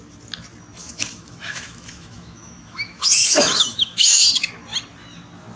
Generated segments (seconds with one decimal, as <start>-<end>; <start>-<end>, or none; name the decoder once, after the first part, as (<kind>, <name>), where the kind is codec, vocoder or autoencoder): 0.8-4.2 (autoencoder, DAC-VAE)